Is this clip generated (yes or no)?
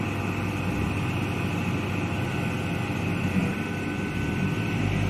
no